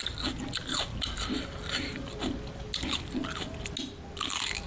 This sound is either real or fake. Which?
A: real